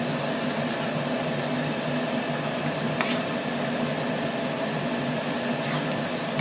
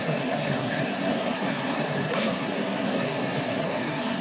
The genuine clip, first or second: first